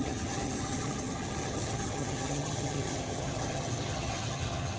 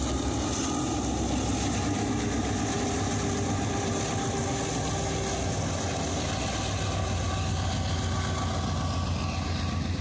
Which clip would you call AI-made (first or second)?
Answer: first